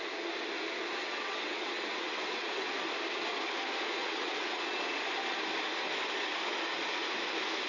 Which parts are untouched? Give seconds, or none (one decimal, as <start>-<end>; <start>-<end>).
0.0-1.0; 2.7-4.0; 4.8-7.7